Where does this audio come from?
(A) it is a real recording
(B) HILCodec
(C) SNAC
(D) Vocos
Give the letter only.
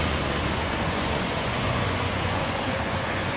D